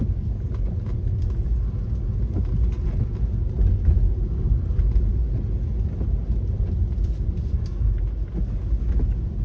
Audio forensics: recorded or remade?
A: recorded